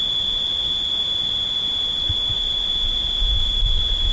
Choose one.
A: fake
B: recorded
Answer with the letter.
A